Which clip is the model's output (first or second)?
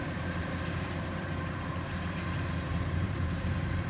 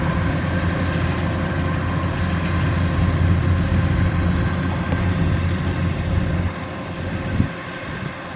first